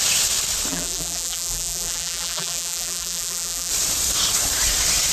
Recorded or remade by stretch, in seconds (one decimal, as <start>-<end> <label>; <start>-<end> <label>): 0.0-0.7 recorded; 0.7-3.7 remade; 3.7-5.1 recorded